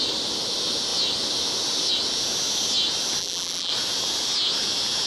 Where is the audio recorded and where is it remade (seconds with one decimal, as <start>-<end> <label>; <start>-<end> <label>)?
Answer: 0.0-3.2 recorded; 3.2-3.7 remade; 3.7-5.1 recorded